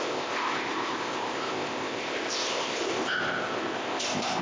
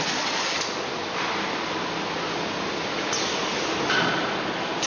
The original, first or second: second